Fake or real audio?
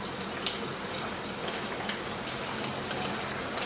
real